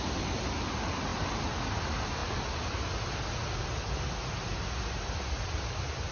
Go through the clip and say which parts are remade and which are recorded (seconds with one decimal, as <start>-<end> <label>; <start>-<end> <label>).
0.0-6.1 recorded